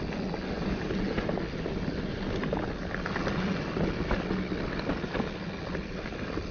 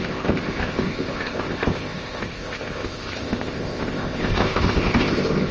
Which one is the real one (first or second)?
first